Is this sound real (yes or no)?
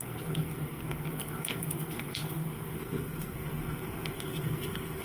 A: no